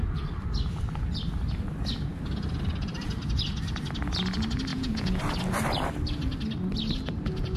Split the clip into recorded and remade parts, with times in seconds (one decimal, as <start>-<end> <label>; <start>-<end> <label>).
0.0-4.7 recorded; 4.7-5.2 remade; 5.2-7.6 recorded